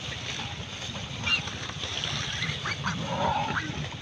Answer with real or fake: real